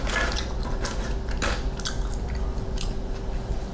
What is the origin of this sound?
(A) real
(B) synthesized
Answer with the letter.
A